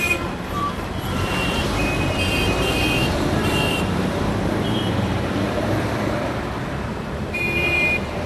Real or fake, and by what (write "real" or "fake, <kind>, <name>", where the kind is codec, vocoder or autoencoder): fake, vocoder, BigVGAN v2